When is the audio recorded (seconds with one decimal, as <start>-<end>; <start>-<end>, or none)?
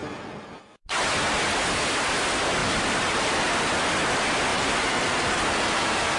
0.0-2.6; 3.4-4.5